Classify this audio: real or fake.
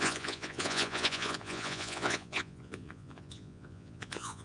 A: fake